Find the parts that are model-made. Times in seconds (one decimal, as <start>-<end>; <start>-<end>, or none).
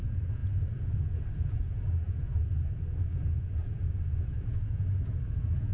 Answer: 0.0-5.7